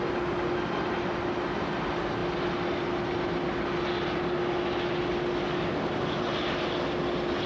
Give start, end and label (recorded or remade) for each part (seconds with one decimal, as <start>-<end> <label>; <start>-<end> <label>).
0.0-7.5 recorded